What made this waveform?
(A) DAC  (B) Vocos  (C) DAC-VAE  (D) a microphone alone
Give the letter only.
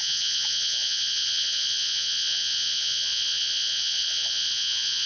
B